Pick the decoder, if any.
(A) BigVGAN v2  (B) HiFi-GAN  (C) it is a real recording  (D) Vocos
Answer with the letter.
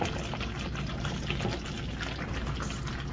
C